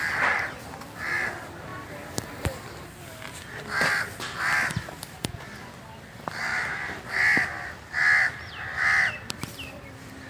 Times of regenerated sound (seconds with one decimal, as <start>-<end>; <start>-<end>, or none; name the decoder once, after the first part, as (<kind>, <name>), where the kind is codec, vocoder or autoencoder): 0.0-1.7 (vocoder, BigVGAN v2); 2.3-6.5; 7.0-10.3